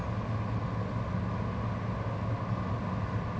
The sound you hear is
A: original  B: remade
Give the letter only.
A